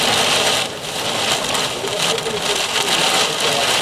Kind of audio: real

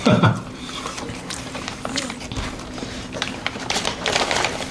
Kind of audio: fake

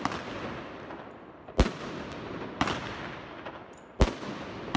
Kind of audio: real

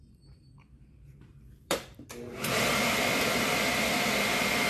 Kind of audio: fake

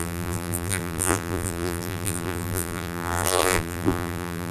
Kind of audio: fake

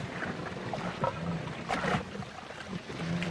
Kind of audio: fake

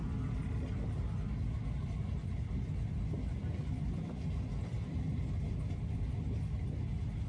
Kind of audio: real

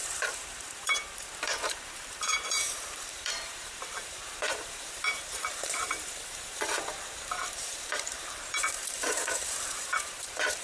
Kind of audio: fake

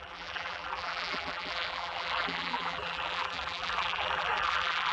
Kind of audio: fake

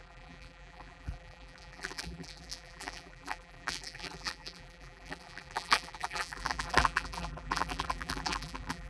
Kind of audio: fake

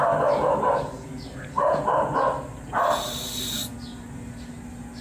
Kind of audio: real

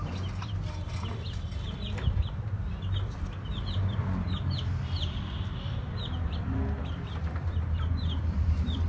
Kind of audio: fake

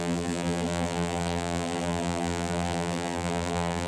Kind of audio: fake